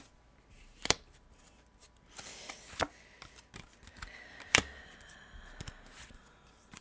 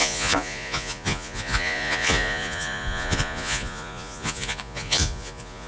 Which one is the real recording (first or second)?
first